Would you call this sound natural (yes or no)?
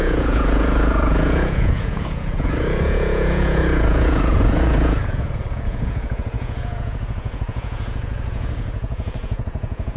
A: no